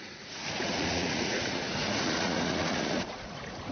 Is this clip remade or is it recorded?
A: remade